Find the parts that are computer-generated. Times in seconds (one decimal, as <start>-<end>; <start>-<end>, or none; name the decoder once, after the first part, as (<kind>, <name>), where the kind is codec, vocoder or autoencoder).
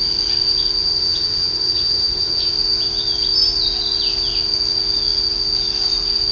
0.8-2.5 (vocoder, HiFi-GAN)